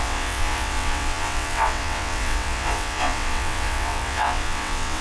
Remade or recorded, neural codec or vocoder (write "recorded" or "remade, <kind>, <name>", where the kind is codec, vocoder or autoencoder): remade, vocoder, WaveNeXt